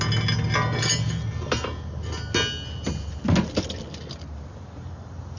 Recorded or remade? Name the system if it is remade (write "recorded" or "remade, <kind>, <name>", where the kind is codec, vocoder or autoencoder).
recorded